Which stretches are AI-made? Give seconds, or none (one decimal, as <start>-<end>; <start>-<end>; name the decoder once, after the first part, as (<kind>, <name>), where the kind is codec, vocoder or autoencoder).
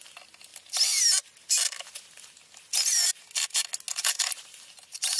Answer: 3.9-5.2 (vocoder, BigVGAN v2)